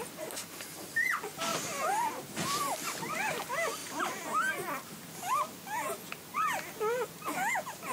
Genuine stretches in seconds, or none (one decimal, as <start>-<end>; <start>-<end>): 0.9-1.5; 3.4-3.8; 5.1-7.9